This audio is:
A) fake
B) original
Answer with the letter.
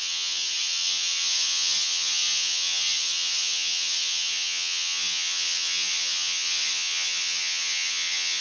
A